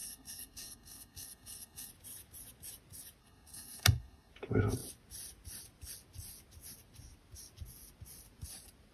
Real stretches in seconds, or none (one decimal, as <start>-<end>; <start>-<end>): 1.9-3.2; 4.3-8.9